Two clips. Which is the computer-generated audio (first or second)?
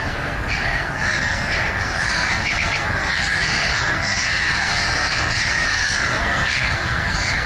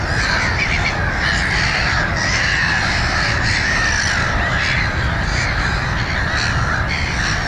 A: first